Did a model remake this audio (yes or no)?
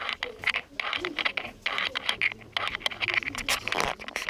no